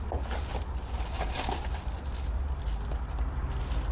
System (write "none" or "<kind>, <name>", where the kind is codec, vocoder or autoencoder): none